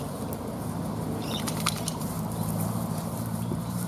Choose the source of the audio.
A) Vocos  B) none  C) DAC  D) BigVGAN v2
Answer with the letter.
D